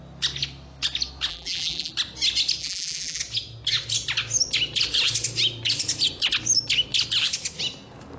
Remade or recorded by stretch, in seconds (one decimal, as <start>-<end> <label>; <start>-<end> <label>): 0.0-1.3 recorded; 1.3-1.9 remade; 1.9-2.6 recorded; 2.6-3.2 remade; 3.2-8.2 recorded